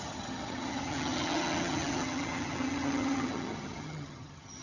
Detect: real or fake fake